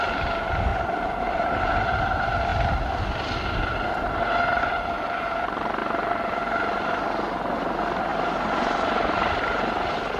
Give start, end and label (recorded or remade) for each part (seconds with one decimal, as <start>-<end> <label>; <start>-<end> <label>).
0.0-0.7 recorded; 0.7-1.9 remade; 1.9-8.1 recorded; 8.1-9.3 remade; 9.3-10.2 recorded